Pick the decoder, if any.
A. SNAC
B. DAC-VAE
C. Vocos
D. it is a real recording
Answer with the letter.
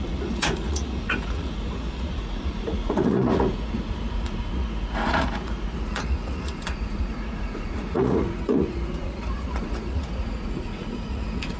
C